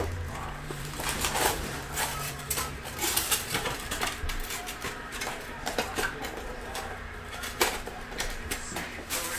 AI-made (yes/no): yes